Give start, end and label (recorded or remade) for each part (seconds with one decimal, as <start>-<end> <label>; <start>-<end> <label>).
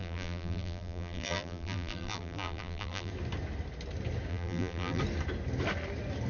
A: 0.0-3.1 remade; 3.1-4.3 recorded; 4.3-5.0 remade; 5.0-6.3 recorded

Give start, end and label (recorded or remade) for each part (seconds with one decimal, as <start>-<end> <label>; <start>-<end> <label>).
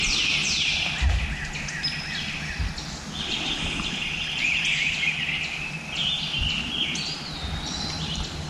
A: 0.0-8.5 recorded